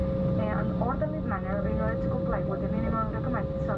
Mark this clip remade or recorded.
recorded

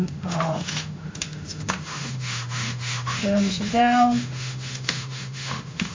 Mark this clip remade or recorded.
remade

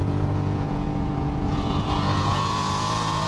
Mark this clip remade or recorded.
remade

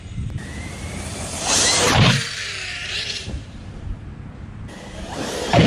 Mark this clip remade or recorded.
remade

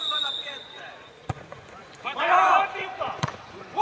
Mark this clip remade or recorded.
remade